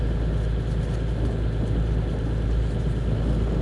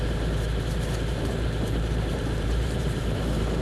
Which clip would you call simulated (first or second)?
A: second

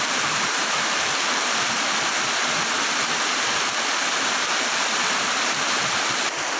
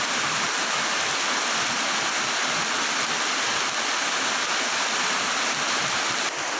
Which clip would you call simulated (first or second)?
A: first